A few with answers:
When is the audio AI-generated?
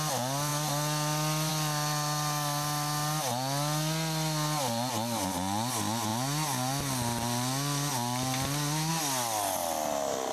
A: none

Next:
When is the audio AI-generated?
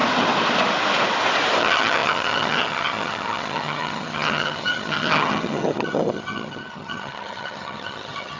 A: 1.6-8.4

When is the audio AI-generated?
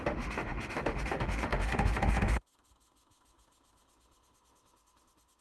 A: 0.0-5.4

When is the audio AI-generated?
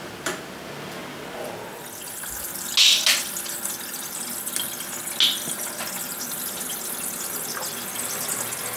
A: 0.0-1.0; 3.2-4.3; 6.7-8.8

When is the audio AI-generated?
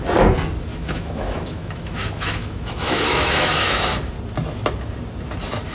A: 0.7-4.1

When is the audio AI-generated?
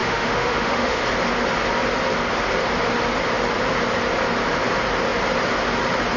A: 0.0-1.0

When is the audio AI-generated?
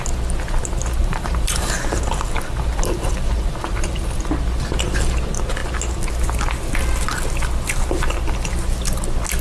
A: 1.0-4.2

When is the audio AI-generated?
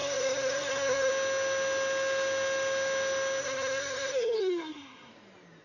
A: 0.0-1.1; 3.4-5.1